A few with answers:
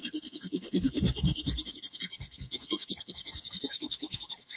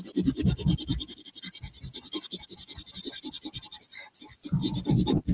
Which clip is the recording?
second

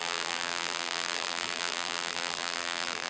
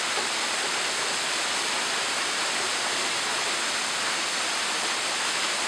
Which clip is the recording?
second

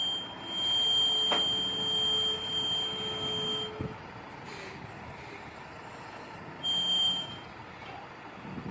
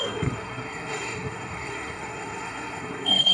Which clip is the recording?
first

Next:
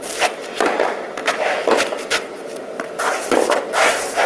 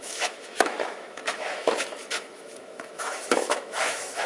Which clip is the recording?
first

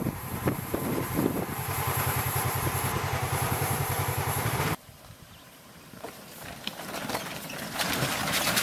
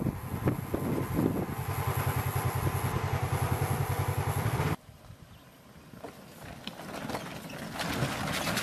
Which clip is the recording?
second